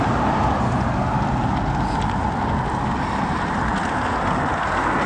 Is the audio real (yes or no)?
yes